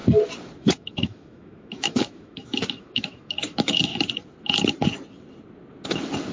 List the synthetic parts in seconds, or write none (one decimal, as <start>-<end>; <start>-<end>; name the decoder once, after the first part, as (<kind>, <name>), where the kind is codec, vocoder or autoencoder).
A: 0.6-3.9 (autoencoder, DAC-VAE)